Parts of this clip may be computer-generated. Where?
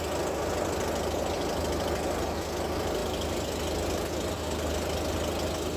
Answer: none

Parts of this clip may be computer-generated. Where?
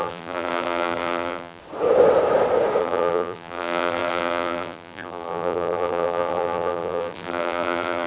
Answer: 0.0-1.6; 2.8-8.1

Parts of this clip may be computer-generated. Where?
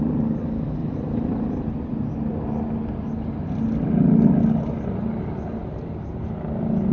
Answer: 0.8-1.4; 5.6-6.2